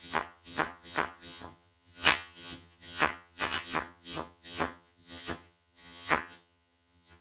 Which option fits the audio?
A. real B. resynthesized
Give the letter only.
B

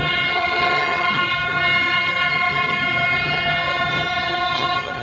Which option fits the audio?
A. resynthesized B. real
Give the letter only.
A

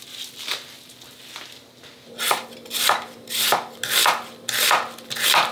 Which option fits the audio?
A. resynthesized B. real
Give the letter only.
B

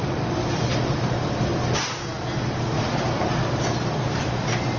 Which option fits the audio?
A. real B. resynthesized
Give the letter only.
A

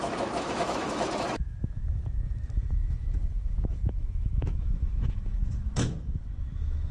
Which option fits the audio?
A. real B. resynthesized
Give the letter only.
B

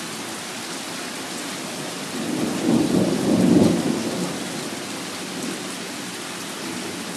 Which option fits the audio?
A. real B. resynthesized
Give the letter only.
B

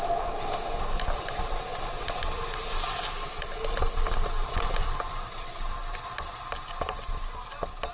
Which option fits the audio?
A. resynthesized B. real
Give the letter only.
B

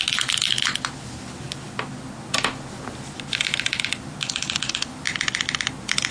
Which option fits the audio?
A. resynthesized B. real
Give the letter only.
B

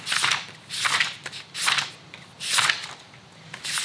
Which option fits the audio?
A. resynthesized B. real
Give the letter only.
B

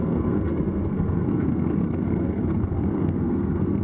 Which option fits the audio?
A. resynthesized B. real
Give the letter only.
A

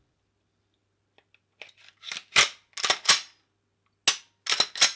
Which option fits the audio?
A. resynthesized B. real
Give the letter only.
B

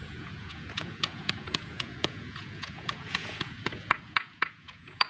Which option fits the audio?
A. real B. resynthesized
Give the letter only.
B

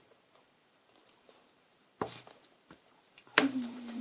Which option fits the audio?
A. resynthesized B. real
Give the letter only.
A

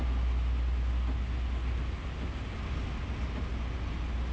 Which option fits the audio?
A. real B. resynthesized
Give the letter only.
A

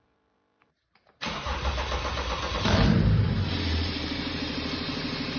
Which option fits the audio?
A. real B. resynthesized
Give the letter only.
B